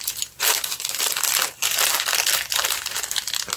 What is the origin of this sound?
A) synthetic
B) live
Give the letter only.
B